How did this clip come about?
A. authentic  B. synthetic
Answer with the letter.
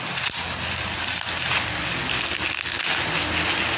A